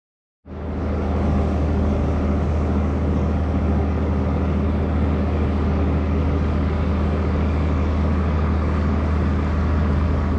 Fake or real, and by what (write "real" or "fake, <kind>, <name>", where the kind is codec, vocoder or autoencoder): fake, codec, DAC